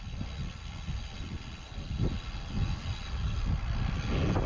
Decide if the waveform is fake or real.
real